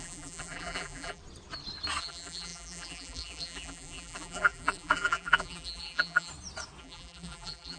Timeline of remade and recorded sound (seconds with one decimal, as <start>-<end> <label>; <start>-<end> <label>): 0.0-1.2 remade; 1.2-2.0 recorded; 2.0-6.3 remade; 6.3-6.8 recorded; 6.8-7.8 remade